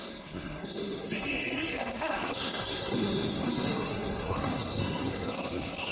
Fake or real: fake